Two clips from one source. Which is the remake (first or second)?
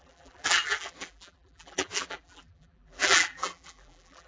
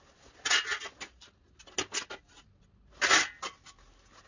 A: first